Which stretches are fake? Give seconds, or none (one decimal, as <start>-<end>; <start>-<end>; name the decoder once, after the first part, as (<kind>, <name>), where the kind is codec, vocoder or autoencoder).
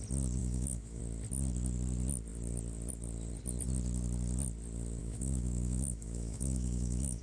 0.4-1.0 (autoencoder, DAC-VAE); 5.0-7.2